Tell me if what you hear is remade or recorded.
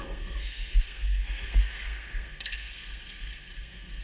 remade